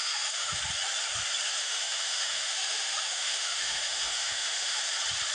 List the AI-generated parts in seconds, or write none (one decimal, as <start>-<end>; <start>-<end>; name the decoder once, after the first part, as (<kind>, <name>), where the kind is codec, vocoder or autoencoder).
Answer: 0.0-0.6 (autoencoder, DAC-VAE); 1.6-4.8